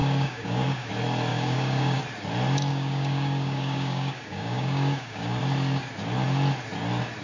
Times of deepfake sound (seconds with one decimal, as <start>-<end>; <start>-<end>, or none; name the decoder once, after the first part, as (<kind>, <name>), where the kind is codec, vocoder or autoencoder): 0.0-0.9 (codec, DAC); 1.3-2.0; 2.7-5.4